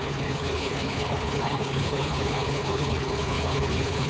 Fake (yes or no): yes